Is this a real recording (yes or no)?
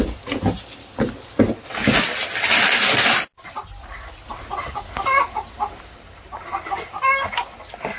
yes